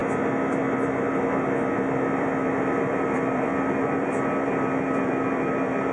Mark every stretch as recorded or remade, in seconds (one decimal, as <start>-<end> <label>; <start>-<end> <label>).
0.0-0.8 recorded; 0.8-5.9 remade